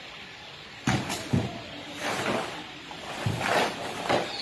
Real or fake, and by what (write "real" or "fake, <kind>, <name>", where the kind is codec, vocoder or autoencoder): real